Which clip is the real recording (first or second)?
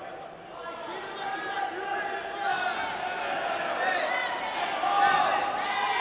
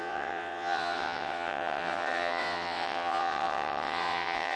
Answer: first